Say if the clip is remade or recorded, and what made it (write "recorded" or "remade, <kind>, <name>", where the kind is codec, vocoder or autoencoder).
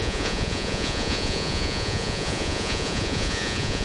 remade, vocoder, Vocos